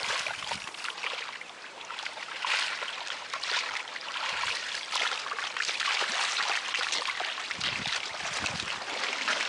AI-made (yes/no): yes